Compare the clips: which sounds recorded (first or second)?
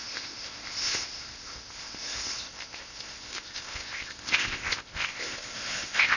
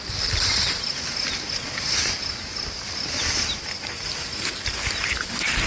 second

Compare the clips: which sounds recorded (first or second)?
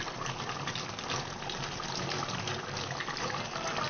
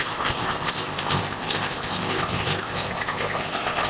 first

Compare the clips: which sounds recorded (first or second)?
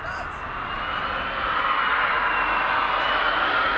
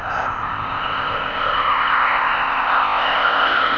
first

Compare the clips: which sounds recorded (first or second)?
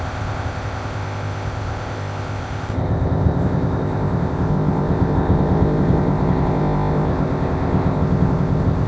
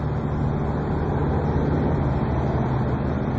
second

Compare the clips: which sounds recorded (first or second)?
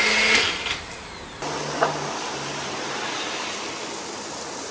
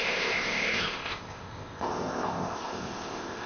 first